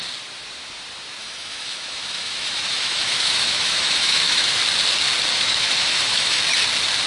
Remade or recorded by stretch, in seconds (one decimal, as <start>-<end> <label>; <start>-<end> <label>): 0.0-1.2 recorded; 1.2-4.6 remade; 4.6-5.3 recorded; 5.3-6.4 remade; 6.4-7.1 recorded